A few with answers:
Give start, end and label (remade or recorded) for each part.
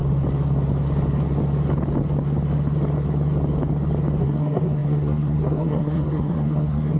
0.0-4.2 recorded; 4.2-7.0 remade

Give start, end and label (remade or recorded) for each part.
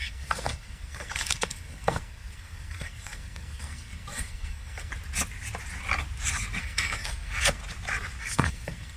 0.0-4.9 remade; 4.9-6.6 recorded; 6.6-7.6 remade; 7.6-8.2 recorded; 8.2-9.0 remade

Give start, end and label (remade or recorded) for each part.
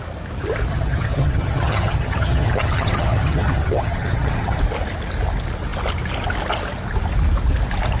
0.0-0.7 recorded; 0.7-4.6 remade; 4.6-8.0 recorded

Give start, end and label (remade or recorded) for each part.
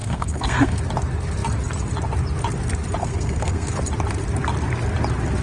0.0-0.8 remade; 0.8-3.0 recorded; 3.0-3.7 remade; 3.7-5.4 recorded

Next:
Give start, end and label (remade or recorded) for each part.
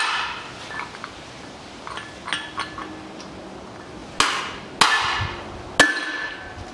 0.0-6.7 recorded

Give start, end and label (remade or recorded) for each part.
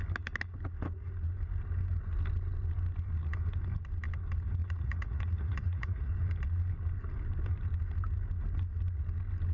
0.0-4.6 recorded; 4.6-6.1 remade; 6.1-9.5 recorded